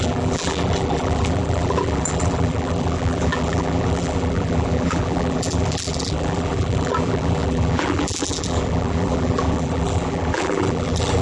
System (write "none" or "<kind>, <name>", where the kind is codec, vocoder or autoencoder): vocoder, BigVGAN v2